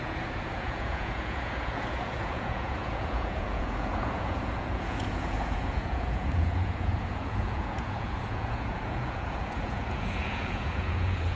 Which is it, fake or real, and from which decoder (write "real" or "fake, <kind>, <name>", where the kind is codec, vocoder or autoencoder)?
fake, vocoder, Vocos